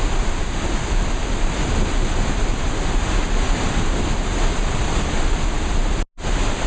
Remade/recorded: recorded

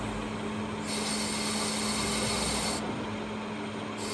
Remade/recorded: recorded